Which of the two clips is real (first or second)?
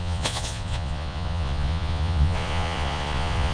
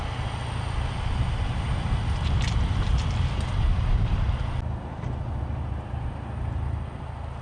second